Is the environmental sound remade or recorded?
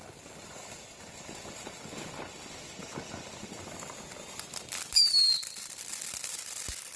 recorded